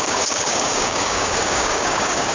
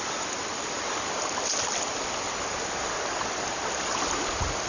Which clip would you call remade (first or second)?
first